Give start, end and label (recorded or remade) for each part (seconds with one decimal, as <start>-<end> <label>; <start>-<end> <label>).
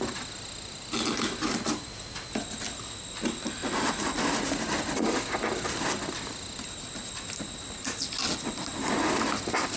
0.0-9.8 recorded